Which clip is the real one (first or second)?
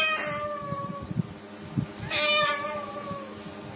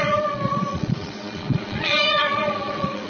first